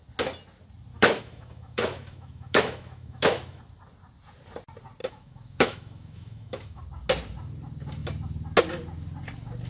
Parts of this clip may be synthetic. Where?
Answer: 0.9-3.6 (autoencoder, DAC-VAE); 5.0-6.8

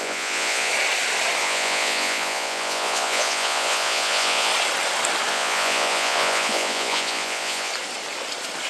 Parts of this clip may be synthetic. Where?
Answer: 0.0-0.7 (vocoder, Vocos); 1.4-4.5; 5.3-7.7